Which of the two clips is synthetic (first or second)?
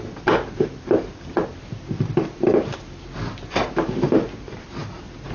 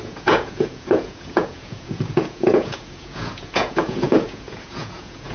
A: second